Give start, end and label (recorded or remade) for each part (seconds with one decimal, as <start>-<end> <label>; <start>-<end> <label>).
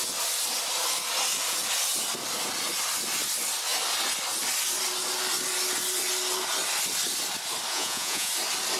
0.0-7.7 recorded; 7.7-8.3 remade; 8.3-8.8 recorded